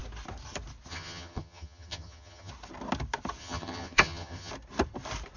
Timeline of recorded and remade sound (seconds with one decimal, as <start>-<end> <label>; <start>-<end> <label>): 0.0-0.9 recorded; 0.9-2.5 remade; 2.5-3.4 recorded; 3.4-4.5 remade; 4.5-5.4 recorded